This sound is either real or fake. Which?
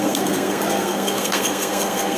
fake